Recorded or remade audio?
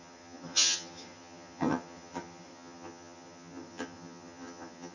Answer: remade